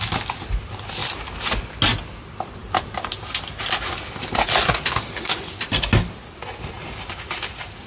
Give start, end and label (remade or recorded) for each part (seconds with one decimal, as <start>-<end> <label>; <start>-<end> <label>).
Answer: 0.0-7.9 recorded